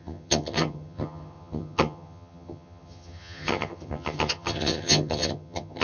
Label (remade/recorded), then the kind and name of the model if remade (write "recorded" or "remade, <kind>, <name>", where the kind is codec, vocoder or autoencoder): remade, vocoder, HiFi-GAN